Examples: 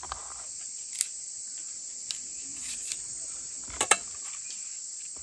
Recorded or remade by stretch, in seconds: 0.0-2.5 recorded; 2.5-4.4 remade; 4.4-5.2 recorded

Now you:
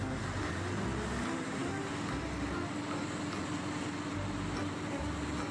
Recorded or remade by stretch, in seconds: 0.0-5.5 recorded